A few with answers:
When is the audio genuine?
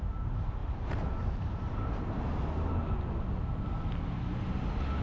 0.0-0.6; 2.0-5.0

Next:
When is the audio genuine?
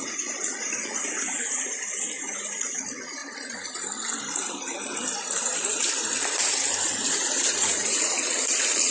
3.2-6.8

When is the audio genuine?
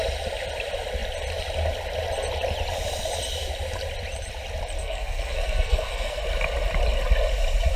0.0-4.8; 6.2-7.8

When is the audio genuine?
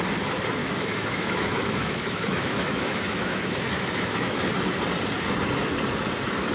0.0-0.6; 4.5-6.5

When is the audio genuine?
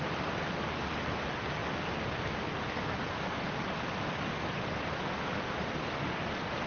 0.0-6.7